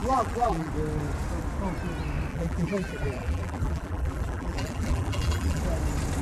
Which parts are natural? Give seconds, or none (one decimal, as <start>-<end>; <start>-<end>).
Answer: 0.7-2.3; 5.6-6.2